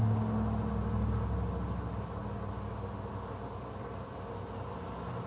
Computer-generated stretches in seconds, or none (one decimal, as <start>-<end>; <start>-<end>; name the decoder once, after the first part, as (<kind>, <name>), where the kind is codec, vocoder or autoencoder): none